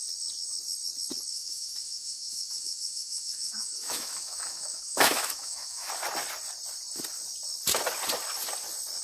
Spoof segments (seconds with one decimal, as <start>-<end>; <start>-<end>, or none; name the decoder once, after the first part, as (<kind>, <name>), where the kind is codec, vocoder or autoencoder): 1.3-5.9 (autoencoder, DAC-VAE)